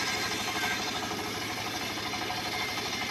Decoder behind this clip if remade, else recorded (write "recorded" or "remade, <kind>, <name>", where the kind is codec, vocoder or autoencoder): recorded